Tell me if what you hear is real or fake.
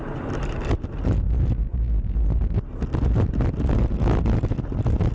real